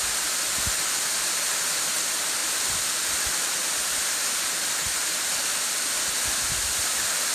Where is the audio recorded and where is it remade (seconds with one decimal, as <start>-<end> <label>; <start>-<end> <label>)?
0.0-7.3 recorded